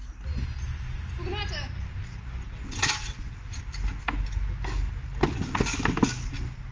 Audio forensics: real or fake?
real